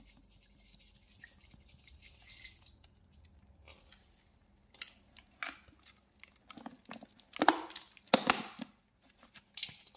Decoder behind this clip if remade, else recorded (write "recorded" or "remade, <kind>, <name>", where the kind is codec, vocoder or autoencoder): recorded